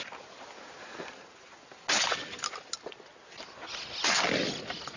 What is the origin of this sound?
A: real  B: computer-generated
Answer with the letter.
A